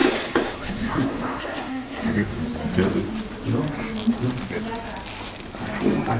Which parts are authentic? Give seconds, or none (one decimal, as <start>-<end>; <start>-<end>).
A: 2.4-6.2